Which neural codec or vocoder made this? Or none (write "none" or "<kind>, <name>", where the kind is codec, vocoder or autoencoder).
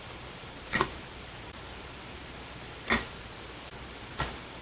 vocoder, BigVGAN v2